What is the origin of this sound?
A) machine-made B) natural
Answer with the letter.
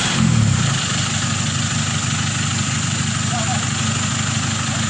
B